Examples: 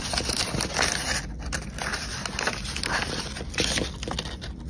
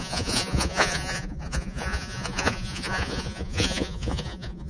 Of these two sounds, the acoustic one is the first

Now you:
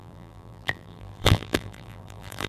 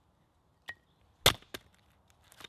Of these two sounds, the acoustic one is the second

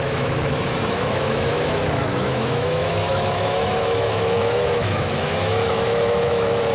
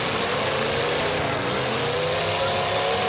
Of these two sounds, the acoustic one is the second